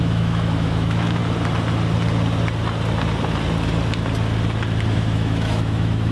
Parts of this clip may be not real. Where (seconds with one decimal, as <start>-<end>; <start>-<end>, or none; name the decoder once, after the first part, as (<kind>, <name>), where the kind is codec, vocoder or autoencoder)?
0.0-1.2 (autoencoder, DAC-VAE); 4.9-6.1